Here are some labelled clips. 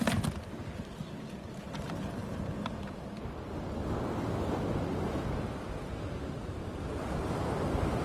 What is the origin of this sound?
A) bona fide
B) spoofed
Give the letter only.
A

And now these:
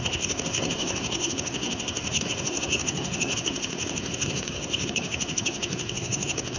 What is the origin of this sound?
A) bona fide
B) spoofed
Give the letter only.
B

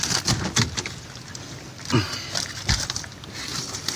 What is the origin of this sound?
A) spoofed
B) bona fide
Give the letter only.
B